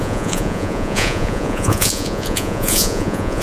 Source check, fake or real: fake